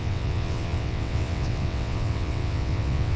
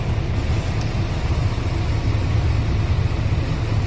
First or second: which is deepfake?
first